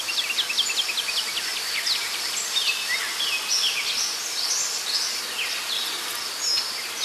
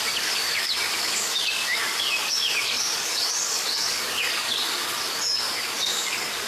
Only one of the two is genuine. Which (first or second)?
first